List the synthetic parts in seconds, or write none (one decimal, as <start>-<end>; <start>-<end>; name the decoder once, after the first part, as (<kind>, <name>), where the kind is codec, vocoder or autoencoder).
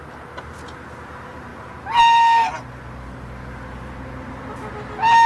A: none